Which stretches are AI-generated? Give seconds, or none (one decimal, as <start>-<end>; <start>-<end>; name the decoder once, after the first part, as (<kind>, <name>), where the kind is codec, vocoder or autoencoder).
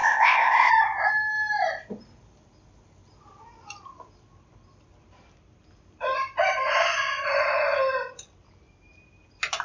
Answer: 0.0-0.7 (codec, ZipCodec)